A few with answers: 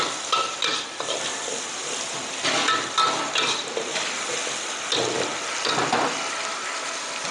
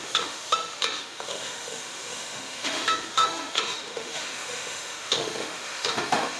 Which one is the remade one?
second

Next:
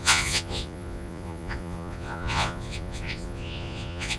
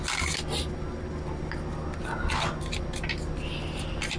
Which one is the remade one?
first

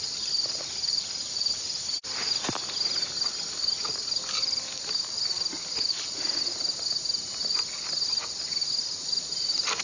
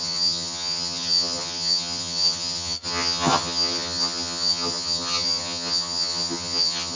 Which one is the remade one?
second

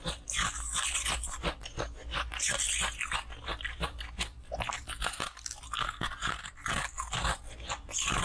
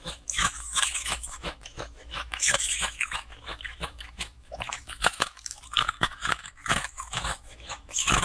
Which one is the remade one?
second